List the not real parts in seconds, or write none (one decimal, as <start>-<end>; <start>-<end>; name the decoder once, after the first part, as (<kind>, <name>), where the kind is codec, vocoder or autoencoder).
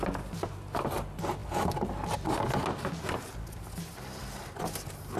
none